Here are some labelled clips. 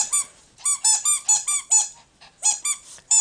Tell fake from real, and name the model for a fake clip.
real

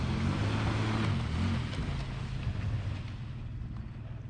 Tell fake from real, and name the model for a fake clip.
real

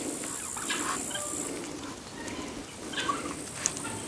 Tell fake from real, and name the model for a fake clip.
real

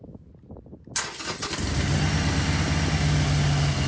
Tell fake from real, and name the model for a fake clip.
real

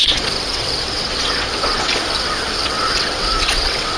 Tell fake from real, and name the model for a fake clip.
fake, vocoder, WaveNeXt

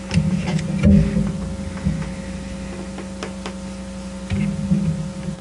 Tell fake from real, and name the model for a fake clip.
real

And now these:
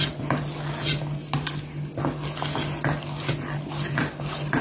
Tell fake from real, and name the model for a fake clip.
real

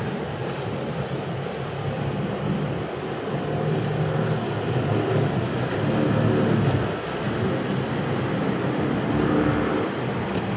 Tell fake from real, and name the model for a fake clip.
real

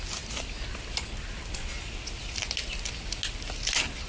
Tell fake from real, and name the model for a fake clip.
real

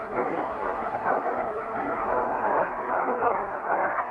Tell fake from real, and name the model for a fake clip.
fake, codec, SNAC